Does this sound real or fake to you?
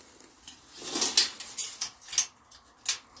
real